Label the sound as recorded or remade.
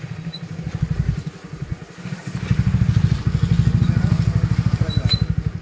recorded